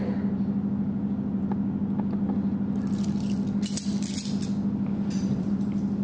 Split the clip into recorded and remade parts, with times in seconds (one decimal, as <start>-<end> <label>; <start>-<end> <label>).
0.0-4.9 recorded; 4.9-5.5 remade; 5.5-6.0 recorded

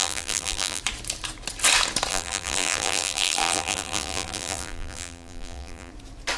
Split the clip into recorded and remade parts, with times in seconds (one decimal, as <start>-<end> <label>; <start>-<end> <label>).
0.0-0.8 remade; 0.8-2.1 recorded; 2.1-5.9 remade; 5.9-6.4 recorded

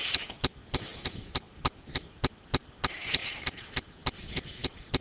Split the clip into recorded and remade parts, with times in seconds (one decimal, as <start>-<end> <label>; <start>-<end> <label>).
0.0-3.2 remade; 3.2-4.4 recorded; 4.4-5.0 remade

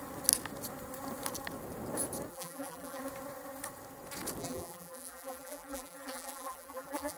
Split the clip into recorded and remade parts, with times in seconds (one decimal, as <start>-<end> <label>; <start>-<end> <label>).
0.0-2.3 recorded; 2.3-3.0 remade; 3.0-4.4 recorded; 4.4-7.2 remade

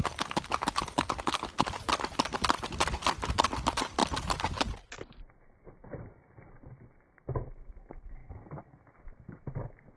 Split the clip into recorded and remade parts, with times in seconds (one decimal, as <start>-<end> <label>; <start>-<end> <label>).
0.0-10.0 recorded